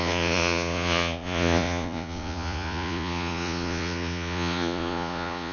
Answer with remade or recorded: remade